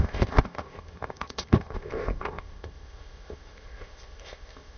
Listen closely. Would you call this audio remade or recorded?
remade